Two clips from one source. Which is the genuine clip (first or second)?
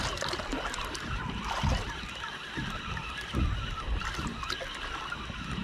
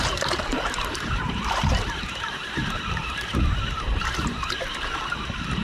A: first